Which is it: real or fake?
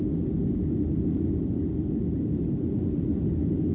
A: real